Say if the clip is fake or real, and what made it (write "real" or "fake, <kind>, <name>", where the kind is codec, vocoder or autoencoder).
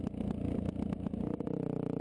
real